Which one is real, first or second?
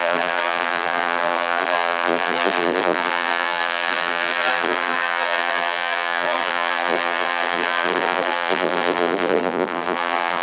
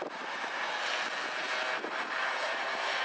second